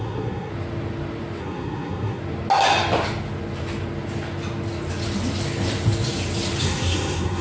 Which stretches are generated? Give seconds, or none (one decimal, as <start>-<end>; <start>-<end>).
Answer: 0.0-0.5; 1.4-2.2; 6.6-7.4